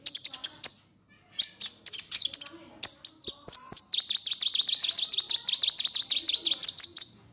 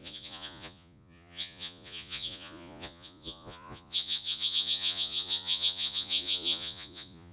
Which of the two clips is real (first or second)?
first